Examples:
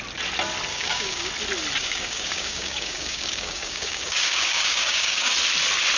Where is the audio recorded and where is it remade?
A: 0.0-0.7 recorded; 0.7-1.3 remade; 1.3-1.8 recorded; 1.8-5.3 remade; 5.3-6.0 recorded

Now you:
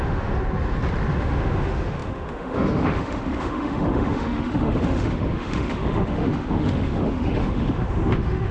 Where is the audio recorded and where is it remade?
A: 0.0-0.4 remade; 0.4-1.2 recorded; 1.2-8.5 remade